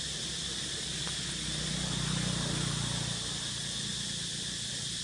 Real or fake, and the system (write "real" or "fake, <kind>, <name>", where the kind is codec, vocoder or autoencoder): real